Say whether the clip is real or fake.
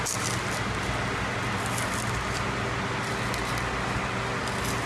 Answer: real